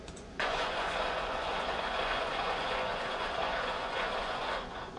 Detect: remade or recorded remade